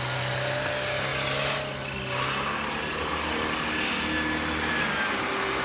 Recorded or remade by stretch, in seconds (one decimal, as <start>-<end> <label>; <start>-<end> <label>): 0.0-5.6 recorded